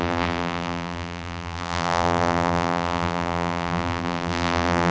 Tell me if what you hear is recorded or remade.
remade